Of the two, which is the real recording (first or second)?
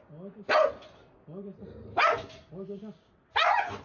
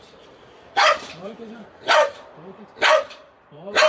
first